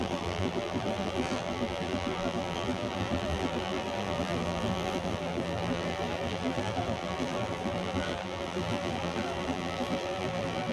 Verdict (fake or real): fake